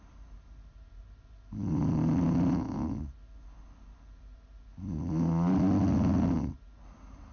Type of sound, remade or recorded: recorded